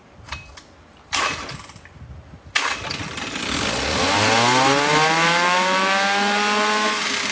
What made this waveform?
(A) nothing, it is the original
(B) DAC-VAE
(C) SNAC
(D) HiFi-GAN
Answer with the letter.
A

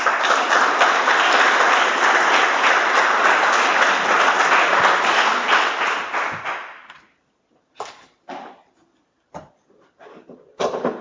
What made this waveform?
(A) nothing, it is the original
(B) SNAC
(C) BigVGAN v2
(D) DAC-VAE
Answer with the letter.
A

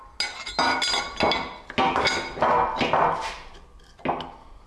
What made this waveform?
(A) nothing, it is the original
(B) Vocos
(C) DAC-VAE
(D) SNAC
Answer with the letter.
A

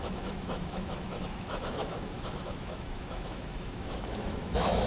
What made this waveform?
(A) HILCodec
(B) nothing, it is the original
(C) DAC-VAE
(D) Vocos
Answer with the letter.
C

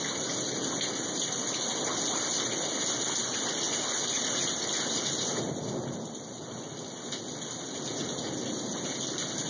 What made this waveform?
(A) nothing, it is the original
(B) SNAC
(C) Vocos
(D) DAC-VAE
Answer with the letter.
A